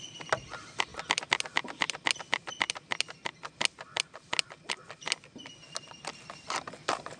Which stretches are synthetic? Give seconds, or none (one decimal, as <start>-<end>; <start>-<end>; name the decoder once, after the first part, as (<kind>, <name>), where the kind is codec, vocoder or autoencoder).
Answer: none